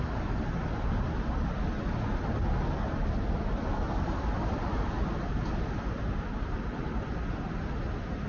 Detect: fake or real real